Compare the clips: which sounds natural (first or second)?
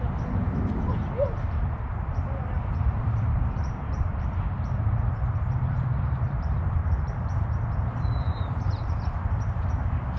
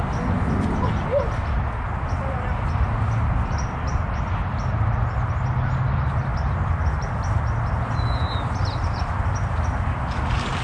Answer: second